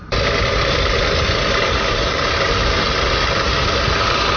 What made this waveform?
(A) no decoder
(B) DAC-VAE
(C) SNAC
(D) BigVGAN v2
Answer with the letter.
A